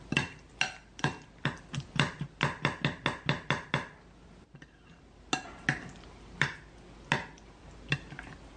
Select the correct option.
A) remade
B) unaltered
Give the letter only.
B